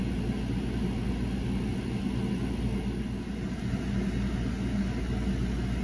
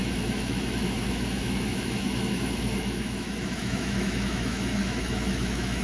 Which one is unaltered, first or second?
first